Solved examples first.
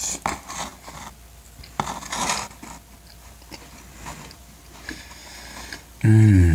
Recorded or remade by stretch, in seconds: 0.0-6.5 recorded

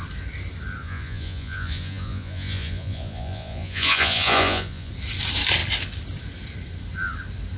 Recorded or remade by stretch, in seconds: 0.0-0.8 recorded; 0.8-4.9 remade; 4.9-7.6 recorded

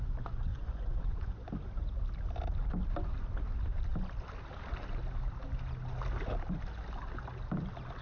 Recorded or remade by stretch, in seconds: 0.0-0.5 recorded; 0.5-1.5 remade; 1.5-8.0 recorded

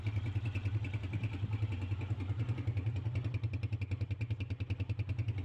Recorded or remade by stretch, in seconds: 0.0-5.4 recorded

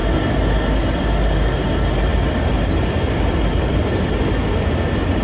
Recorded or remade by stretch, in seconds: 0.0-5.2 recorded

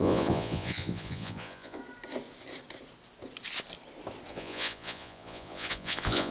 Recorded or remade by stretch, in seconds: 0.0-1.8 remade; 1.8-4.3 recorded; 4.3-6.3 remade

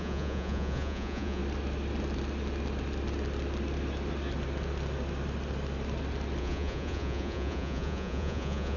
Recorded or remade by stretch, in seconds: 0.0-1.4 remade; 1.4-6.4 recorded; 6.4-8.8 remade